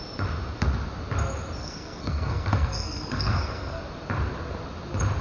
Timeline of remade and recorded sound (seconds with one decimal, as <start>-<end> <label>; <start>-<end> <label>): 0.0-1.6 recorded; 1.6-3.8 remade; 3.8-5.2 recorded